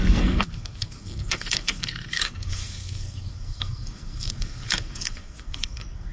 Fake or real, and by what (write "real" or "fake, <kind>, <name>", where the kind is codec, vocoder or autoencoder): fake, codec, SNAC